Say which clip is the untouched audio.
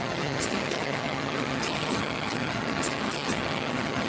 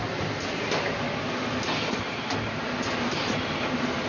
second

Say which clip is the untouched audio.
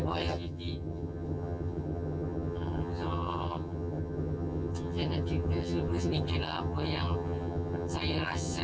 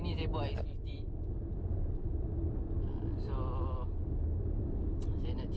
second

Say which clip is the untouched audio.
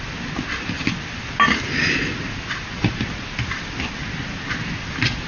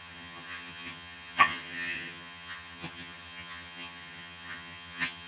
first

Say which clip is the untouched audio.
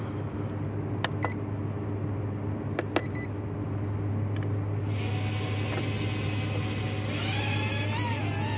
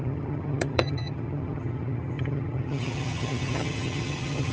first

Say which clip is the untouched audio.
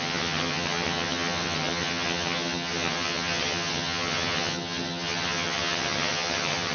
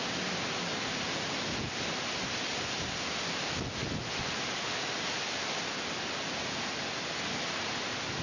second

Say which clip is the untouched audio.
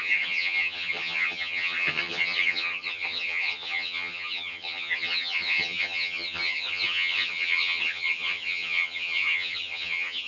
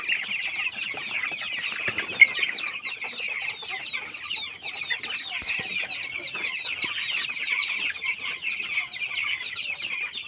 second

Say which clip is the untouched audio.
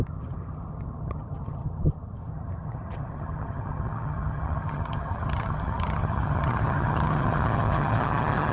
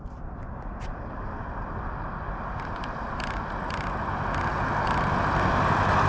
second